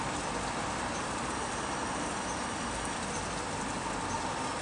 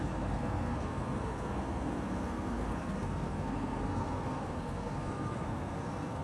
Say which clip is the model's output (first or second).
second